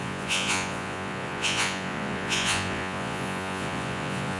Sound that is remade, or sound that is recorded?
remade